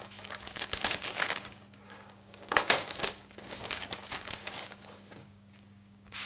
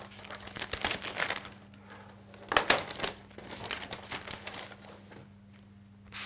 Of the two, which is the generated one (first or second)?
first